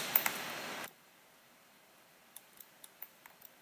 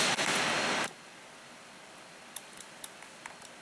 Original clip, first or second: second